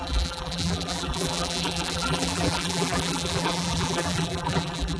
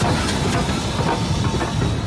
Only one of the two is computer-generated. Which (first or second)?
first